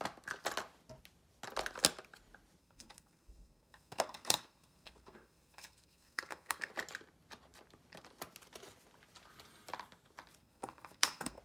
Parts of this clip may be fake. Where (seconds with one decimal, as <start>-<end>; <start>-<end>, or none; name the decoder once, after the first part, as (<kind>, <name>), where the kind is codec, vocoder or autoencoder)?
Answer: 2.6-6.7 (codec, SNAC); 10.4-11.4